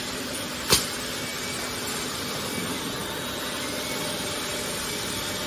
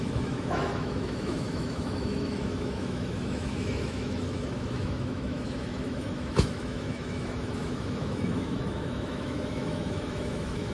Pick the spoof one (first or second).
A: second